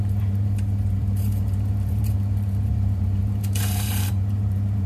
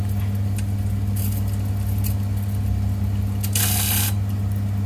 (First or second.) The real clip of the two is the second